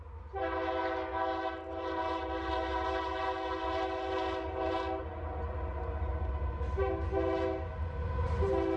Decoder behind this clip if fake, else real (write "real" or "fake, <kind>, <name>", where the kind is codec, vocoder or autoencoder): real